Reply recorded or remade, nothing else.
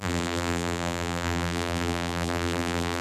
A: remade